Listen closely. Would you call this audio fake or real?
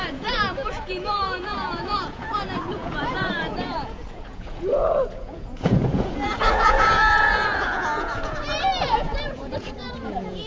fake